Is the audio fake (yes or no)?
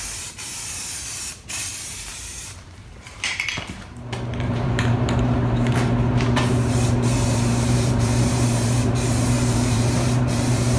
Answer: yes